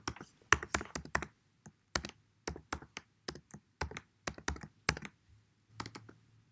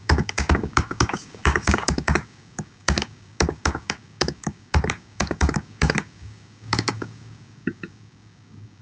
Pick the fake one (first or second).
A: second